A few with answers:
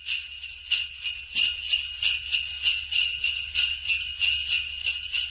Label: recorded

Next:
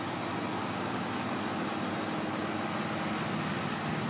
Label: recorded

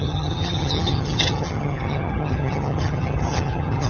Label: remade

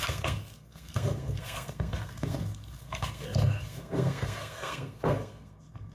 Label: remade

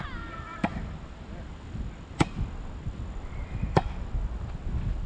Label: recorded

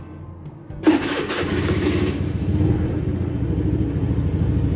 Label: recorded